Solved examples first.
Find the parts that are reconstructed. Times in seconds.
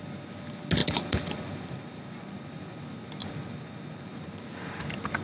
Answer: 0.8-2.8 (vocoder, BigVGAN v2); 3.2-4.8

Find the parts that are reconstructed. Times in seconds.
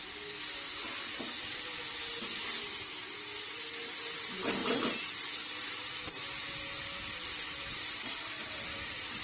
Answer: 4.6-5.7 (vocoder, BigVGAN v2)